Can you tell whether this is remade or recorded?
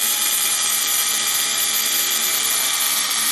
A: remade